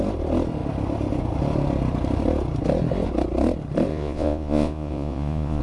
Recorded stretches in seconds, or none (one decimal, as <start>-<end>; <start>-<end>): 0.0-3.9